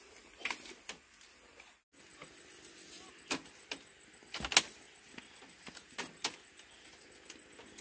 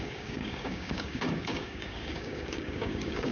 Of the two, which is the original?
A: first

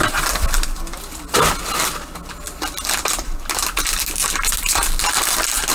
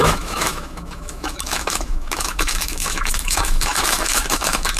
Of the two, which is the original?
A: first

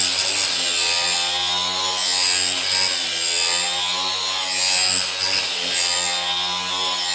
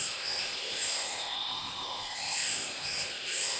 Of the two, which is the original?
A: first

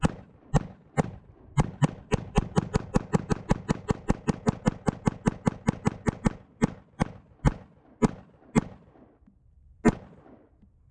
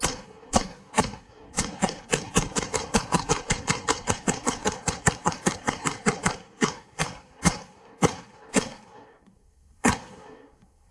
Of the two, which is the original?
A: first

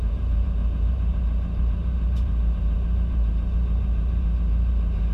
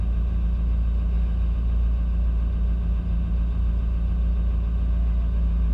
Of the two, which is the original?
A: second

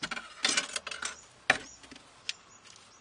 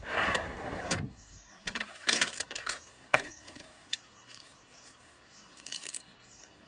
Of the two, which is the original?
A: first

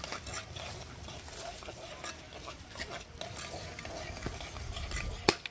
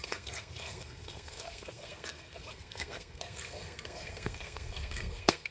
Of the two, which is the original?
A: first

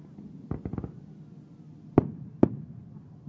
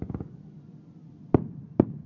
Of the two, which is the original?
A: first